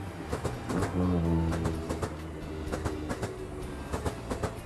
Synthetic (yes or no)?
no